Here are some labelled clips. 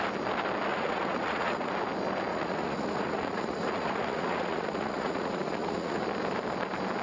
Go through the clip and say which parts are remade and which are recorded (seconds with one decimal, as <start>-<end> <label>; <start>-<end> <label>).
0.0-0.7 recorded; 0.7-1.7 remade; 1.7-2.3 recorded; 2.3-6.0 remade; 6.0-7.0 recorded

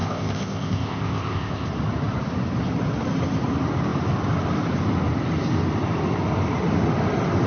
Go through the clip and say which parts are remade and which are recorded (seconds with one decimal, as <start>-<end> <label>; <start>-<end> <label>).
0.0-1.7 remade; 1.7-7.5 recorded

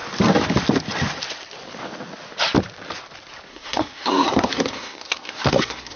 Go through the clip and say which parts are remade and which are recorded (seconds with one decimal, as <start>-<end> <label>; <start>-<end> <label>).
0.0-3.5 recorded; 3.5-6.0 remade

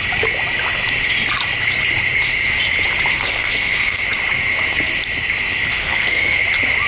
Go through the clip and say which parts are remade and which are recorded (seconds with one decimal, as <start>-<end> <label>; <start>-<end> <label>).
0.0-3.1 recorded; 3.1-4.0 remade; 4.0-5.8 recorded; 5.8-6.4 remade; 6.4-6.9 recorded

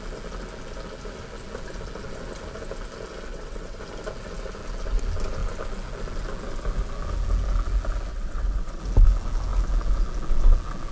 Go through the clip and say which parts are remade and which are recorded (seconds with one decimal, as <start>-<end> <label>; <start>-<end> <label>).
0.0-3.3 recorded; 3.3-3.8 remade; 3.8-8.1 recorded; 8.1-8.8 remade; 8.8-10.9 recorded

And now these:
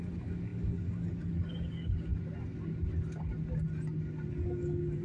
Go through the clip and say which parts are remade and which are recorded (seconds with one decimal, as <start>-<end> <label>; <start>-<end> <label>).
0.0-2.1 remade; 2.1-4.3 recorded; 4.3-5.0 remade